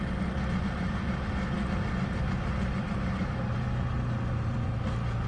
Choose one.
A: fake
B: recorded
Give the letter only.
B